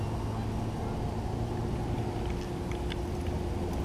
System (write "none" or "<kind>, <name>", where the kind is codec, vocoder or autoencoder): none